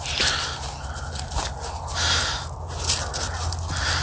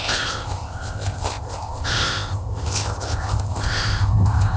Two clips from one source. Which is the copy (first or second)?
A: second